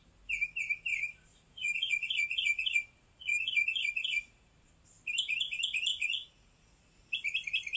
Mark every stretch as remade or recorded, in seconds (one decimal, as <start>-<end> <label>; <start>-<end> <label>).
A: 0.0-0.9 recorded; 0.9-4.7 remade; 4.7-5.9 recorded; 5.9-7.1 remade; 7.1-7.8 recorded